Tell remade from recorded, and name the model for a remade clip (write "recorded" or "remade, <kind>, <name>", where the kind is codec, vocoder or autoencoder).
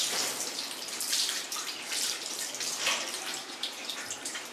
remade, vocoder, BigVGAN v2